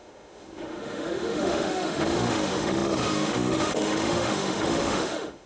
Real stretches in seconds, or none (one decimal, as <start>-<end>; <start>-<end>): none